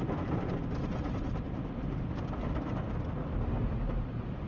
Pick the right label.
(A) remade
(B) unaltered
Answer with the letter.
B